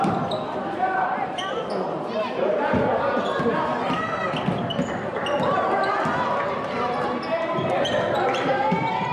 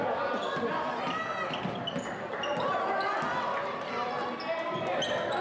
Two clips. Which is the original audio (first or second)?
second